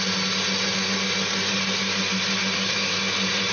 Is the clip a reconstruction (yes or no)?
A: no